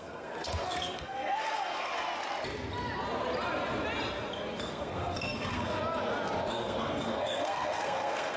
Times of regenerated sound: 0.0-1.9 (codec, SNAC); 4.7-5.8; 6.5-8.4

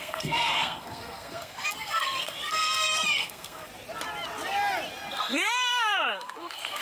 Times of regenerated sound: 0.0-3.7 (codec, SNAC); 5.1-6.8

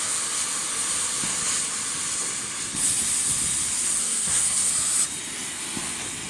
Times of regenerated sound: 4.0-4.7 (codec, SNAC)

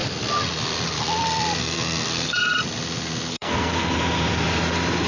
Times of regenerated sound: 1.6-2.6 (codec, SNAC); 3.3-3.9